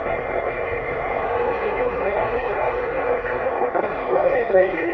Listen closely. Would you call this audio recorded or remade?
remade